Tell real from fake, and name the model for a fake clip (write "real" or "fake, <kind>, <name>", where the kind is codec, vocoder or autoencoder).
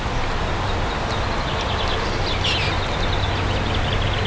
real